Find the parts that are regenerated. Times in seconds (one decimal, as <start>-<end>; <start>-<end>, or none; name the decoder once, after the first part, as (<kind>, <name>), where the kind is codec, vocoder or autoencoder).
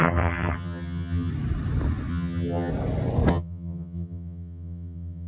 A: 0.0-1.3 (vocoder, HiFi-GAN); 2.1-2.7; 3.3-5.3